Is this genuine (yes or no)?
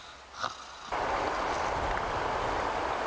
yes